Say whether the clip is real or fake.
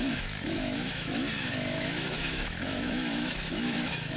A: fake